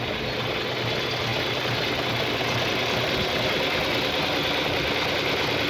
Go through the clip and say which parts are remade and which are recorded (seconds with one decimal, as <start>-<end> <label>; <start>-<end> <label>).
0.0-5.7 recorded